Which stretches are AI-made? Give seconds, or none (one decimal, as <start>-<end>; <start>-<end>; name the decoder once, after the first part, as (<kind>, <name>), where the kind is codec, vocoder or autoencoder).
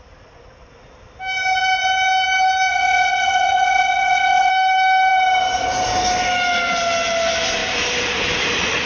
2.7-4.5 (vocoder, WaveNeXt)